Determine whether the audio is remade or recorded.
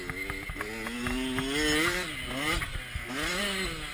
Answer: recorded